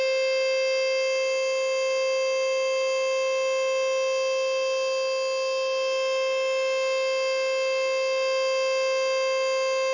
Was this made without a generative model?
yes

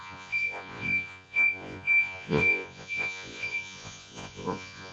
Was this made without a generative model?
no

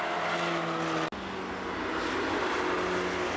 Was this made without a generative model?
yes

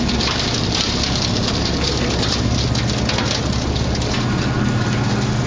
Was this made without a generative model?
yes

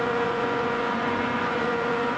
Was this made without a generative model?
no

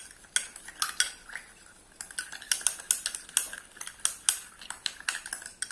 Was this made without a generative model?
yes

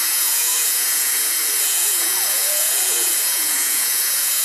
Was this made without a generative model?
no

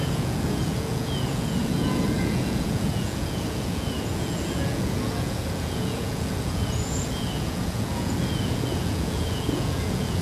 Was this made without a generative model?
no